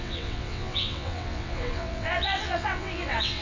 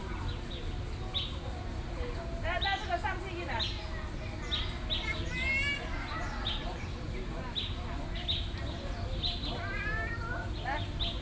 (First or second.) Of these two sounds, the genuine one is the second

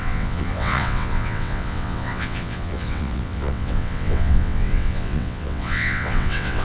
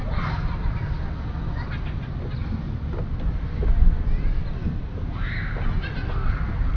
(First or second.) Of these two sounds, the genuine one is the second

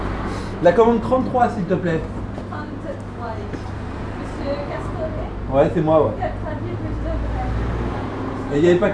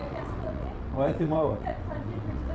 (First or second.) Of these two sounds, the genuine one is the first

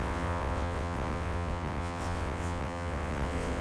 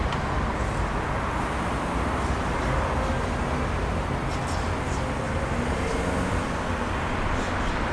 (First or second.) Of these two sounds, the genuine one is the second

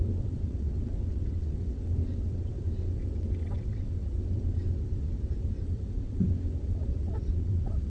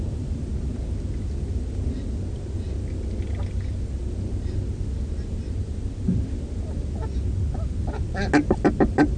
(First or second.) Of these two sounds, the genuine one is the second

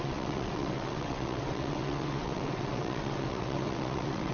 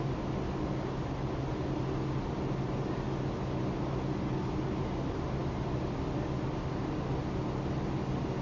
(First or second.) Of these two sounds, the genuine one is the second